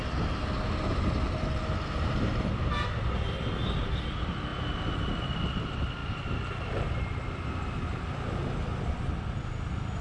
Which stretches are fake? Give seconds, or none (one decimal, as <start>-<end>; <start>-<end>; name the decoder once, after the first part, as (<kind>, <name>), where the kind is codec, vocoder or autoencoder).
none